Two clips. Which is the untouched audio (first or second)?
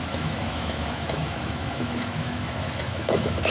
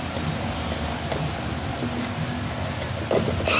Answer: second